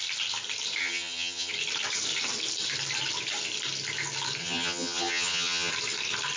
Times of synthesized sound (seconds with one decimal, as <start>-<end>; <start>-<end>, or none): 0.8-1.5; 4.4-5.7